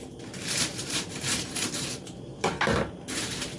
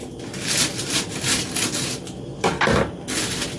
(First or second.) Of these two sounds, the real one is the second